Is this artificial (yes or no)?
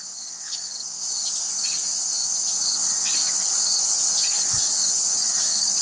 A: yes